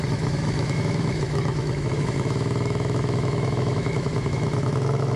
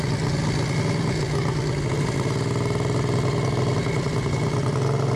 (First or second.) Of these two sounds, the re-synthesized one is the first